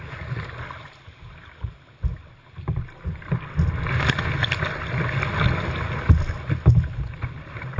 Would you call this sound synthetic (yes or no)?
no